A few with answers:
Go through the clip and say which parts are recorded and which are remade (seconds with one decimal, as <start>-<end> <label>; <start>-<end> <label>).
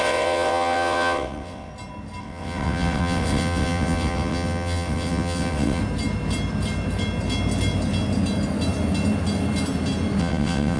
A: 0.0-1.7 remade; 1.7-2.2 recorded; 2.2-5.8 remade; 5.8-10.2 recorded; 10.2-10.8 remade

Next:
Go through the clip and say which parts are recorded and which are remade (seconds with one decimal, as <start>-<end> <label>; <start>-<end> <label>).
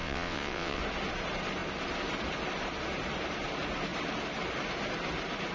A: 0.0-0.8 remade; 0.8-5.5 recorded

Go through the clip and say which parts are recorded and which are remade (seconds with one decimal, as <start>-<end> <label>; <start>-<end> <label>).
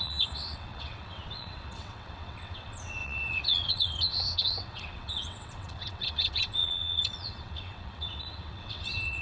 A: 0.0-9.2 remade